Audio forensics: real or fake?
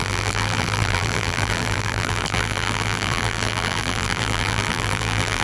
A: fake